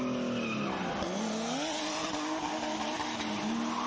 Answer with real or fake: real